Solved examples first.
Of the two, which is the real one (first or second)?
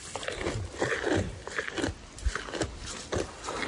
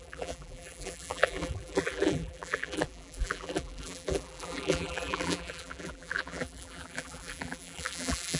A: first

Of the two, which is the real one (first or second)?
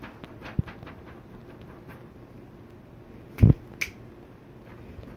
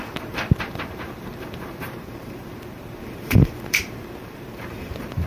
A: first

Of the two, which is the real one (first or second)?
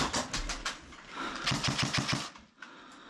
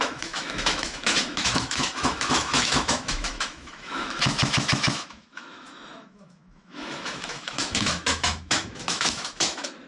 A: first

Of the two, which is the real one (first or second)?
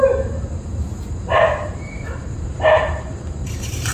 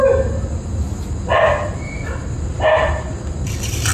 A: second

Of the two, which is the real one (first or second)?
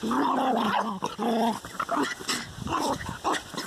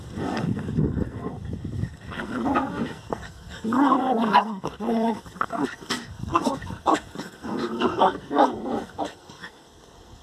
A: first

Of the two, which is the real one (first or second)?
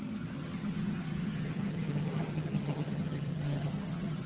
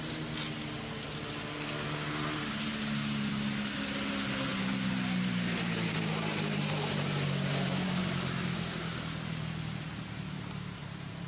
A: second